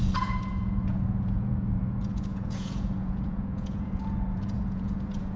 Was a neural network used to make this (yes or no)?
yes